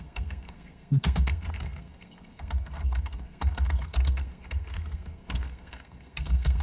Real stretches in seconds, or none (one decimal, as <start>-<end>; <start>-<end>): none